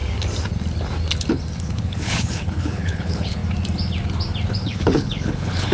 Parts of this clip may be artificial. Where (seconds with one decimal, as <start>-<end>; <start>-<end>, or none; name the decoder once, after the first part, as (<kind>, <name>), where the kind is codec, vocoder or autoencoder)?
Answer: 1.6-3.4 (codec, HILCodec); 4.5-5.7